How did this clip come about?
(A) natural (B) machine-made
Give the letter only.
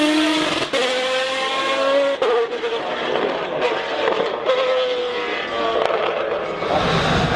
A